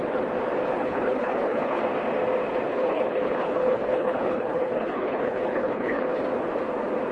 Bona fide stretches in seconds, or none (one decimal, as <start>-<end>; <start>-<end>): 0.0-0.7; 1.8-2.7; 6.2-7.1